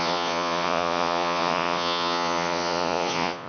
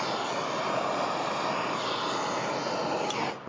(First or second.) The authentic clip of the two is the second